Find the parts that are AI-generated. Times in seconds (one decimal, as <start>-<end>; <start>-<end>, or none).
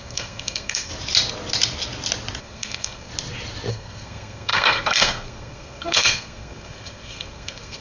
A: 0.0-0.9; 2.4-3.1; 3.7-7.8